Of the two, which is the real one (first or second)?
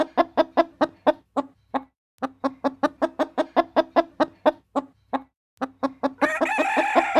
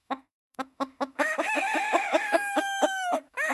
first